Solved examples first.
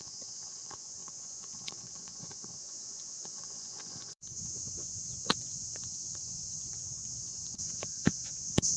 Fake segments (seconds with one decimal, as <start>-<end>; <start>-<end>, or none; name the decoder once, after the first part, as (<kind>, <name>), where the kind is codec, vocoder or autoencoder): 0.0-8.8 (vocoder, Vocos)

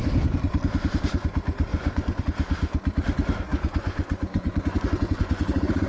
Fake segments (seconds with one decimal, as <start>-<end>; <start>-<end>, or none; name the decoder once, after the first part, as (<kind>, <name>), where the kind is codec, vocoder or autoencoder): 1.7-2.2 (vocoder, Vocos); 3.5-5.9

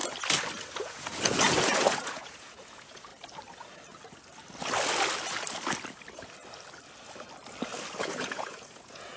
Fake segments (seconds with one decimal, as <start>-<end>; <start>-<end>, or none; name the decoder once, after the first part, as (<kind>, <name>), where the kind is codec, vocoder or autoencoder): 0.6-3.1 (vocoder, Vocos); 8.0-9.2